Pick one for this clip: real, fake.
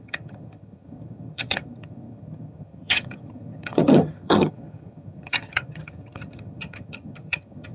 fake